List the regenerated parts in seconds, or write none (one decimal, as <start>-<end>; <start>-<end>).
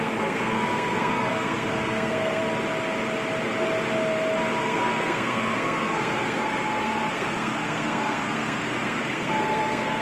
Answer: 0.0-2.4; 4.6-10.0